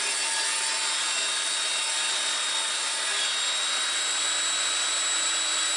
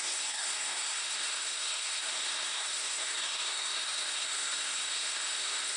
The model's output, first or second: second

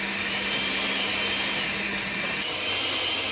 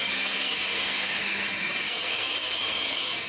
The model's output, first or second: second